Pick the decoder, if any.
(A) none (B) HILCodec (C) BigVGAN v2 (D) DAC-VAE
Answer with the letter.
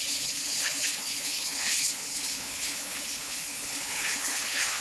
B